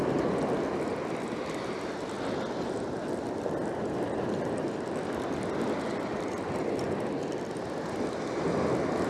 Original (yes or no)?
yes